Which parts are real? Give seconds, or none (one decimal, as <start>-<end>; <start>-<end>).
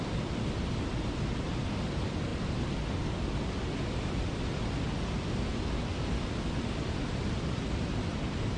0.0-8.6